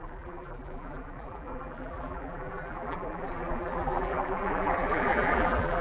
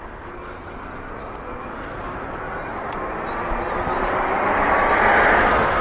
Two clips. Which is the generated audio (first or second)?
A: first